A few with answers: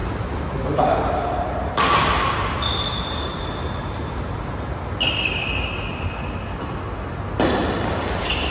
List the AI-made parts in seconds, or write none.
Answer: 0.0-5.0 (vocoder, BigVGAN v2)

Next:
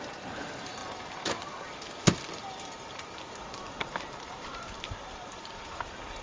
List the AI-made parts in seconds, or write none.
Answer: 0.0-0.8 (vocoder, BigVGAN v2); 2.9-6.2

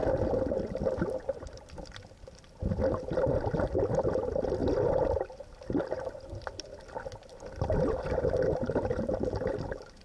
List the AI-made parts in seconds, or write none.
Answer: 0.0-2.8 (vocoder, BigVGAN v2); 4.6-8.9

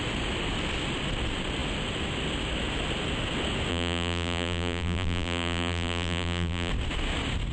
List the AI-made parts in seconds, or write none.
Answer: 3.7-6.7 (vocoder, BigVGAN v2)

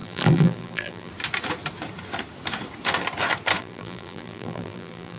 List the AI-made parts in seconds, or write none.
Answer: 0.0-1.1 (vocoder, BigVGAN v2); 3.6-5.2